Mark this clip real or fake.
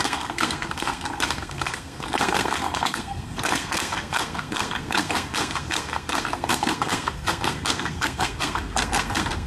fake